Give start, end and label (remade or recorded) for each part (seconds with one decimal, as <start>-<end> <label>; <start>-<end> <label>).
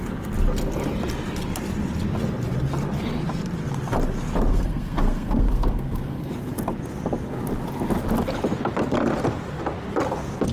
0.0-4.5 recorded; 4.5-6.3 remade; 6.3-10.5 recorded